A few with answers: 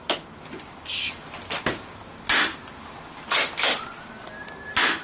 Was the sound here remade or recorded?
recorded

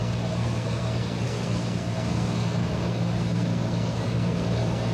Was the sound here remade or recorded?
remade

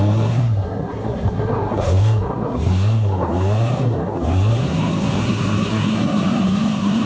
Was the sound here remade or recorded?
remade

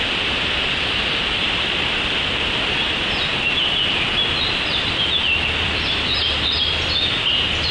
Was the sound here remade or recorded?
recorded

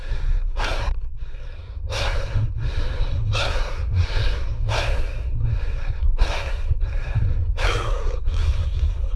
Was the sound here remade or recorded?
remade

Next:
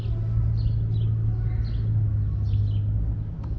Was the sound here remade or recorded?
recorded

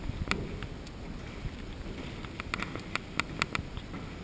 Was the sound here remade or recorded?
recorded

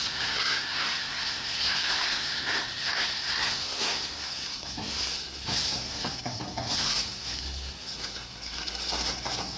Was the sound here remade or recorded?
remade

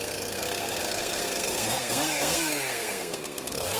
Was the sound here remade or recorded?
remade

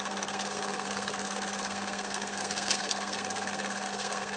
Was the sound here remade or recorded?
remade